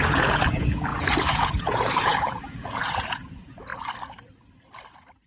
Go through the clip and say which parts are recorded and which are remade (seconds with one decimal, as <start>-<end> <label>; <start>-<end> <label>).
0.0-3.7 remade; 3.7-5.3 recorded